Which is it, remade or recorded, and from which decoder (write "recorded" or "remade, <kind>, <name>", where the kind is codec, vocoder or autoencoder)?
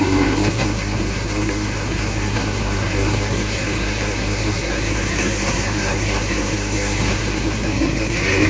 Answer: remade, codec, SNAC